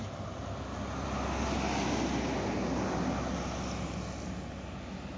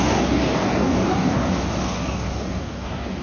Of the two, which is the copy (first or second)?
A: second